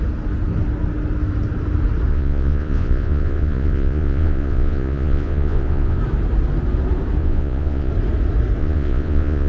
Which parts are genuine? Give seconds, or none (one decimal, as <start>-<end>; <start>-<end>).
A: 0.0-2.1; 6.0-7.2; 7.9-8.6